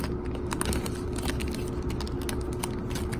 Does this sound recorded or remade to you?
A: recorded